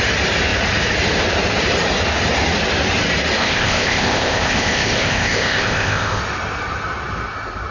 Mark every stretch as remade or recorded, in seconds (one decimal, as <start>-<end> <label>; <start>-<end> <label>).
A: 0.0-3.4 recorded; 3.4-6.2 remade; 6.2-7.7 recorded